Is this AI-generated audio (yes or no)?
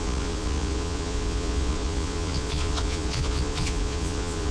yes